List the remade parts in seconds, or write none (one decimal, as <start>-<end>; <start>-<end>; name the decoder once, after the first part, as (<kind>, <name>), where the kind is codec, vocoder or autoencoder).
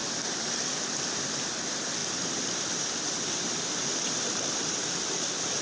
0.0-5.6 (vocoder, BigVGAN v2)